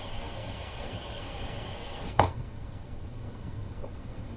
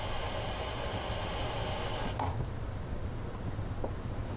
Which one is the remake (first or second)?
first